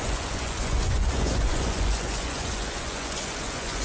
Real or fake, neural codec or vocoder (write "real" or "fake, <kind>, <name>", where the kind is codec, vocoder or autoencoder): fake, vocoder, Vocos